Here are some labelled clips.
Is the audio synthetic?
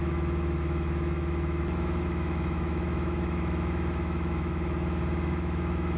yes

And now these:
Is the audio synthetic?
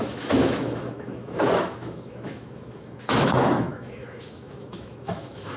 yes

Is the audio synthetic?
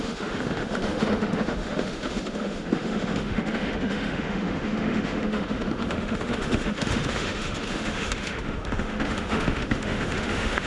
yes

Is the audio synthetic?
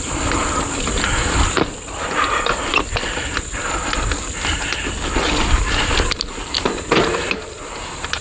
no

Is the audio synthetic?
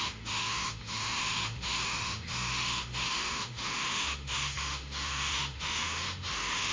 yes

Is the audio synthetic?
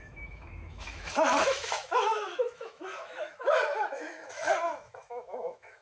yes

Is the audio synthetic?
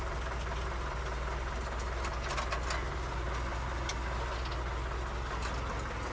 no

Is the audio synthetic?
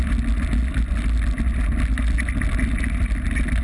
no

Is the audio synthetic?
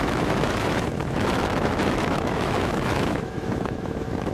yes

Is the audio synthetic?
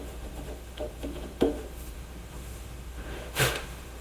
yes